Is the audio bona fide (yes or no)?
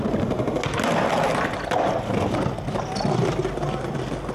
yes